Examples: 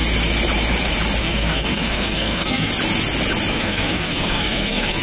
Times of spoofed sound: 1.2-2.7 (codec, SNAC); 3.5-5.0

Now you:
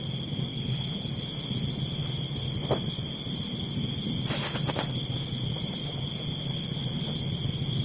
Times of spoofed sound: 0.5-1.1 (codec, HILCodec)